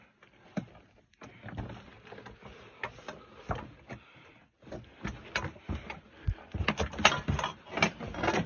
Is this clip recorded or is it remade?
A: recorded